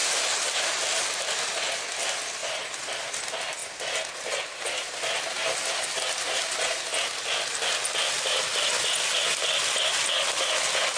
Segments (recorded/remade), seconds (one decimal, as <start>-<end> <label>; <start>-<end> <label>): 0.0-2.4 recorded; 2.4-3.1 remade; 3.1-11.0 recorded